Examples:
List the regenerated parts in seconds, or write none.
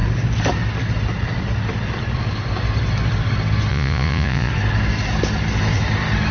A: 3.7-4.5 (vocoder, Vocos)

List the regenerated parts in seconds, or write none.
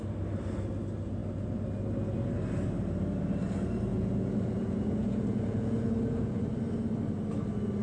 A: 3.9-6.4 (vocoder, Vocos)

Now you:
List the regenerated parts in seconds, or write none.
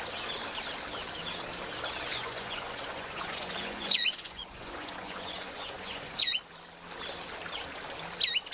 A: 2.1-6.4 (vocoder, Vocos)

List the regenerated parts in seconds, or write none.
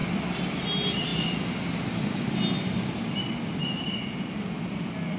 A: none